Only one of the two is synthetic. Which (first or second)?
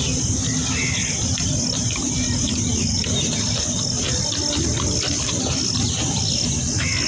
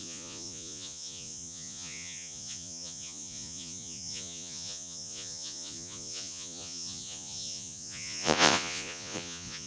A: second